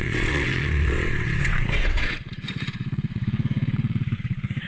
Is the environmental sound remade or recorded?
remade